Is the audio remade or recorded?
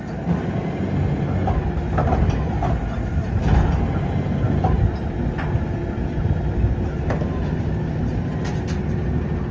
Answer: recorded